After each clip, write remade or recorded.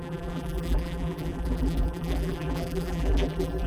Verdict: remade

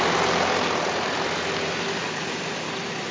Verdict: recorded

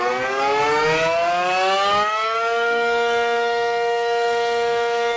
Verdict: remade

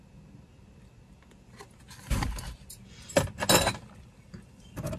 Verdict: recorded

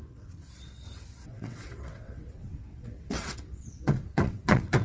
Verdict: remade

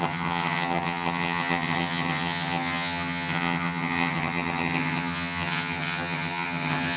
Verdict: remade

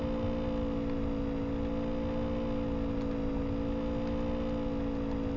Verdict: recorded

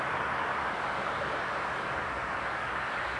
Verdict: remade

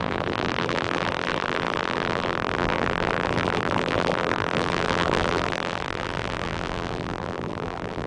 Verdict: remade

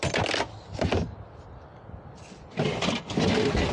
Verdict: recorded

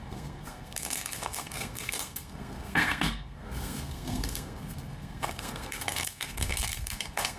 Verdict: remade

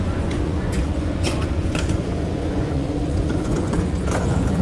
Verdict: remade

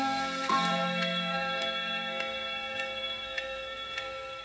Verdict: remade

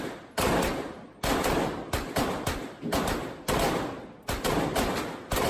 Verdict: recorded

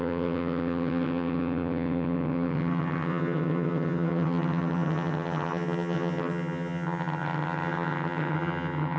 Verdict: remade